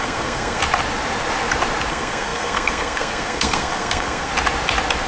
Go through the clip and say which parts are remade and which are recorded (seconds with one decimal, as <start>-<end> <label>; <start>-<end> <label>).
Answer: 0.0-0.6 remade; 0.6-1.9 recorded; 1.9-4.3 remade; 4.3-5.1 recorded